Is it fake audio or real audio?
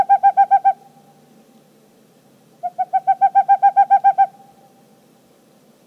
real